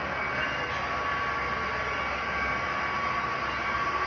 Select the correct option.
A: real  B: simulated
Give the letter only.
A